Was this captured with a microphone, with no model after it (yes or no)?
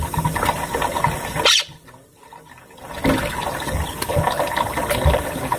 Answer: yes